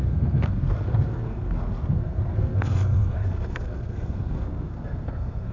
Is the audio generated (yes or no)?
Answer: yes